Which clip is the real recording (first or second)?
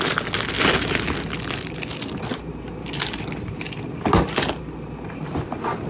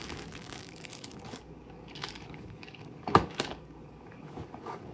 first